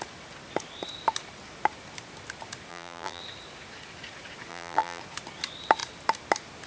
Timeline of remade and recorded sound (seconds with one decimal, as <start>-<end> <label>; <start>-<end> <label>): 0.0-2.7 recorded; 2.7-3.2 remade; 3.2-4.5 recorded; 4.5-5.0 remade; 5.0-6.7 recorded